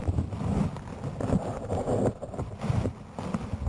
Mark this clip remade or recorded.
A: recorded